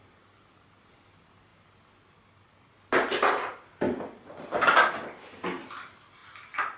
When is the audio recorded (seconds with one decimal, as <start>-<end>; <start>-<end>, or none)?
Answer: 0.0-6.8

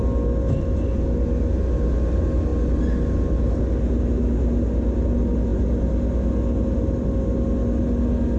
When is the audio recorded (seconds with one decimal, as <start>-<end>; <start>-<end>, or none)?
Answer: 0.0-8.4

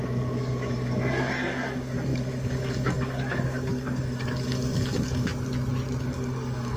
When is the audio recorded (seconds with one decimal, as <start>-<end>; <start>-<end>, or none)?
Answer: 5.3-6.0

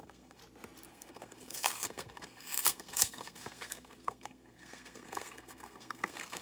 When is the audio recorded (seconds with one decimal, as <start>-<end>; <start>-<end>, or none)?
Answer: 0.4-0.9

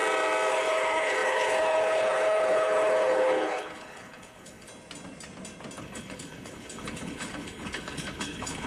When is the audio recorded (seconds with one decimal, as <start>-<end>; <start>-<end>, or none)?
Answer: 0.0-0.5; 4.7-5.8

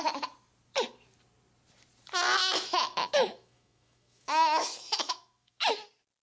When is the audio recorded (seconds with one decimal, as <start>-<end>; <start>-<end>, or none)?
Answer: 0.0-2.4; 5.7-6.2

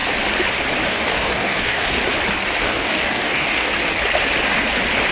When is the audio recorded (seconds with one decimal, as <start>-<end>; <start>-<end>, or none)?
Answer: 0.0-0.9; 2.0-2.6; 3.7-5.1